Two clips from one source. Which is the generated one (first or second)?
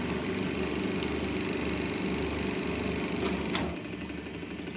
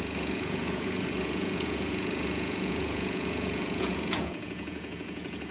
second